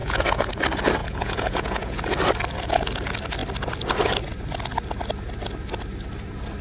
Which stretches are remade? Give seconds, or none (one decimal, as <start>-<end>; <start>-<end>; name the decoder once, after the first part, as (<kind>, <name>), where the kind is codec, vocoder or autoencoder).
0.0-0.5 (vocoder, Vocos); 1.0-2.0